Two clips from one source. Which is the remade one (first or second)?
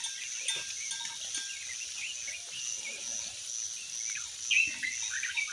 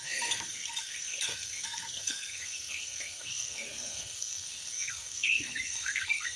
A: second